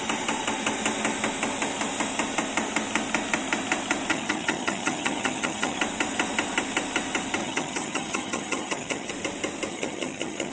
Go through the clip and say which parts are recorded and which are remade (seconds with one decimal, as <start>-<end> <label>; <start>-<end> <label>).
0.0-4.1 recorded; 4.1-5.8 remade; 5.8-7.4 recorded; 7.4-9.1 remade; 9.1-9.7 recorded; 9.7-10.5 remade